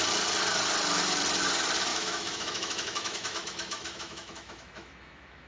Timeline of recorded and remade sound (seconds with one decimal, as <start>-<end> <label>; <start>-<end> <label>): 0.0-1.9 recorded; 1.9-5.5 remade